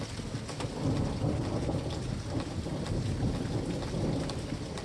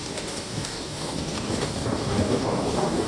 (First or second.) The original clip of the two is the first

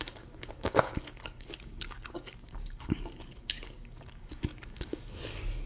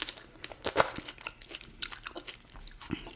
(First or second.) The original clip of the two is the second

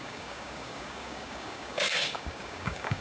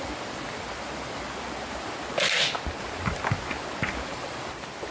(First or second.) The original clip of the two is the second